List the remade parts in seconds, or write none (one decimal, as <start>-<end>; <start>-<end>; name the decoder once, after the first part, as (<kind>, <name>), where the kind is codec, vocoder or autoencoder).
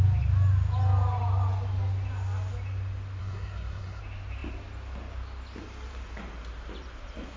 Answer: 3.2-4.0 (codec, SNAC)